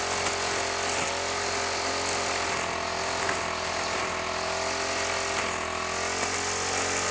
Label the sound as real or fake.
real